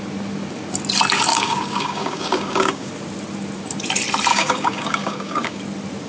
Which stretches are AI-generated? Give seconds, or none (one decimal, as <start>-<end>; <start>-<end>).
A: 1.3-2.9; 4.3-5.6